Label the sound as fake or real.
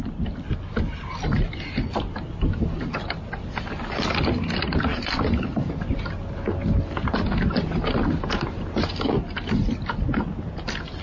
real